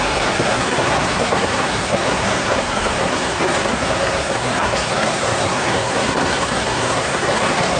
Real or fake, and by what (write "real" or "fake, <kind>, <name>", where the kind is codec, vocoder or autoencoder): fake, codec, SNAC